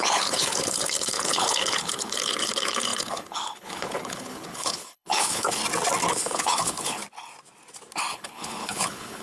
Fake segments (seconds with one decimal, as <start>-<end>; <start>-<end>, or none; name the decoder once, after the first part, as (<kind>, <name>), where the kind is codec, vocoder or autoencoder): 0.0-5.6 (codec, HILCodec); 6.1-7.0; 8.1-9.2